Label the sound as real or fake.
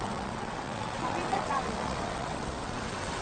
fake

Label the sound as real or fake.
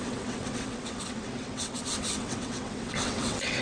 fake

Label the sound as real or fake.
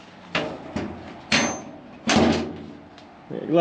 real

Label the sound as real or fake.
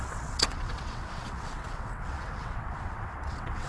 fake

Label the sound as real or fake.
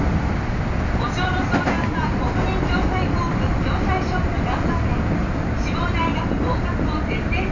real